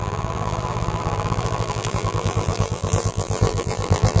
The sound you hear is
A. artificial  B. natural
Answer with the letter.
A